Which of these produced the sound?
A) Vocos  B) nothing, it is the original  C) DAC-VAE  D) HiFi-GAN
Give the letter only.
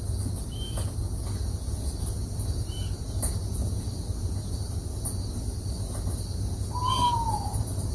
B